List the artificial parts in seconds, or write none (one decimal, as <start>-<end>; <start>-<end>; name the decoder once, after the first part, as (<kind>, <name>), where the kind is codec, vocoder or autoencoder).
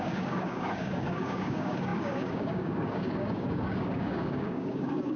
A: 0.0-5.2 (codec, DAC)